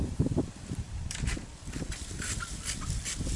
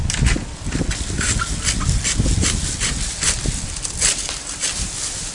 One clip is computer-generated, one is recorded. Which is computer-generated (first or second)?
first